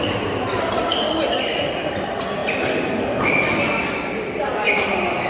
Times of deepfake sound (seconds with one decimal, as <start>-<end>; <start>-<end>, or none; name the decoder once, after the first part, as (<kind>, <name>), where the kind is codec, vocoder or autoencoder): none